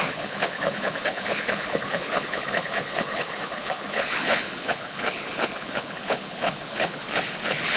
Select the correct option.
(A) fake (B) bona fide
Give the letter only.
A